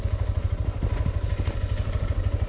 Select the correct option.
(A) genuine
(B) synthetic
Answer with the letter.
A